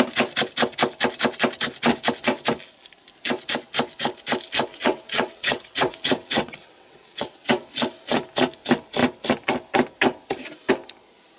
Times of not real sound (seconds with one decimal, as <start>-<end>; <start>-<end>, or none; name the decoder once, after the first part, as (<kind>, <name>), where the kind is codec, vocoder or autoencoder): 4.7-7.5 (vocoder, WaveNeXt)